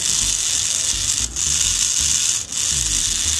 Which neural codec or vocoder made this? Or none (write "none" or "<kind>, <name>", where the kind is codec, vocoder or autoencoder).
none